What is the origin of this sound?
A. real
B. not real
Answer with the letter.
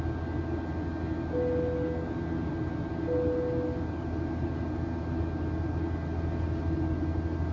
A